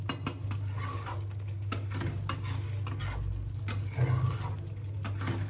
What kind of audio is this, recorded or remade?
recorded